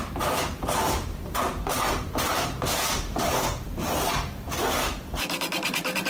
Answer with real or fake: fake